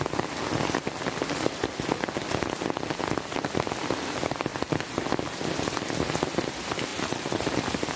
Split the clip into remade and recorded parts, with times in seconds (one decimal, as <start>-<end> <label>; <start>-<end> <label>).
0.0-4.5 recorded; 4.5-5.1 remade; 5.1-6.9 recorded; 6.9-7.6 remade; 7.6-8.0 recorded